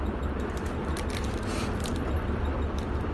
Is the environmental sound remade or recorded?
remade